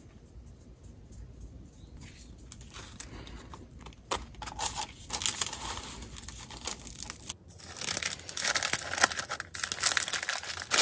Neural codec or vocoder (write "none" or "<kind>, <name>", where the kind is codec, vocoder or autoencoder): none